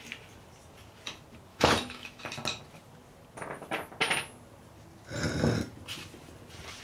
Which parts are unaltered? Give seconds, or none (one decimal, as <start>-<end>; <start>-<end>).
0.0-1.5; 2.2-6.8